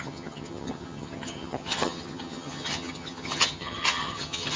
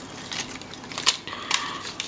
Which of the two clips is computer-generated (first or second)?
first